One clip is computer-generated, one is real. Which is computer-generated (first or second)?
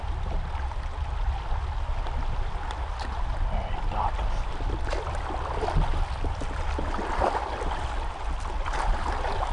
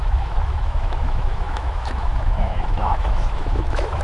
second